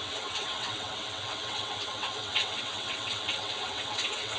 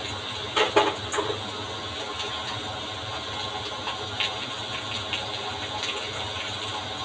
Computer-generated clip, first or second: first